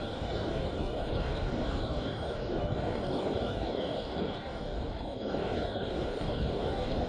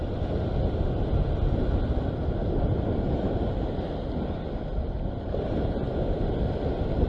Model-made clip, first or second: first